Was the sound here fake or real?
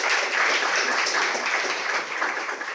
real